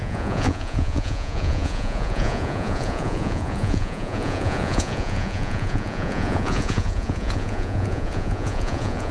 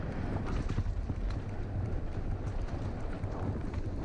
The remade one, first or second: first